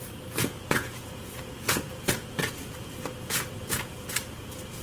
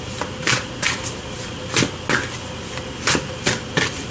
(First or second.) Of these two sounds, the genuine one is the second